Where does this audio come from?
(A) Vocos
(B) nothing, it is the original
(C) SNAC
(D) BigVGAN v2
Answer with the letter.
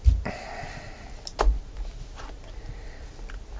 B